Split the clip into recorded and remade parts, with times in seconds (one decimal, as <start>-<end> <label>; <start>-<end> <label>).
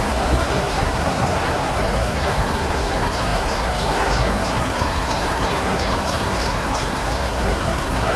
0.0-8.2 remade